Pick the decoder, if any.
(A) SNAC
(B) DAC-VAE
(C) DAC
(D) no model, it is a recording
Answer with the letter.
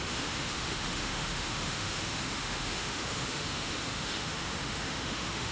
B